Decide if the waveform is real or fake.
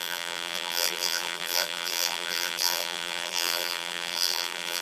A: fake